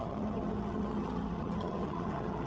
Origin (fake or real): fake